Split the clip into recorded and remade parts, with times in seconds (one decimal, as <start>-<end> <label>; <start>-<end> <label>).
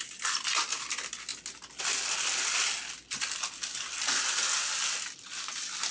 0.0-5.9 recorded